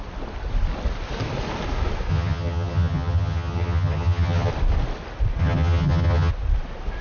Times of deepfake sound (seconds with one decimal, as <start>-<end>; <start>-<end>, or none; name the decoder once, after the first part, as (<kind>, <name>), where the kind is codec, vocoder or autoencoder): 2.1-4.5 (vocoder, HiFi-GAN); 5.4-6.3

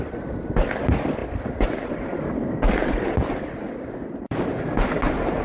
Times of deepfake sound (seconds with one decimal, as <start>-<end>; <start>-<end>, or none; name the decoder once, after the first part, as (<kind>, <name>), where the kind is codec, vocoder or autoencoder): 1.2-4.4 (vocoder, BigVGAN v2)